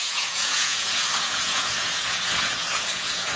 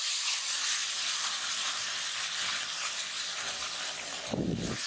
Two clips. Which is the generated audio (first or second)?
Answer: first